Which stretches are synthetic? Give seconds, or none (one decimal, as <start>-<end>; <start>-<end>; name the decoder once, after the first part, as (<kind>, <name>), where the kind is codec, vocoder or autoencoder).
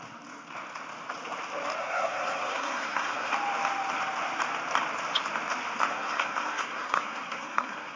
1.8-3.3 (codec, SNAC); 5.9-8.0